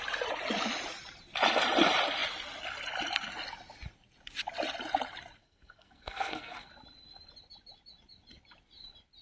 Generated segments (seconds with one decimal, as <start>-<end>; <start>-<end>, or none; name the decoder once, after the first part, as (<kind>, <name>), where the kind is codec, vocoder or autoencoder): 5.4-6.7 (codec, SNAC)